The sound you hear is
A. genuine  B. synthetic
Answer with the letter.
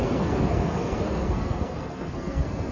B